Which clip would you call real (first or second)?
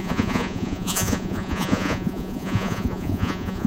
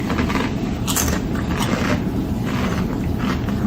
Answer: second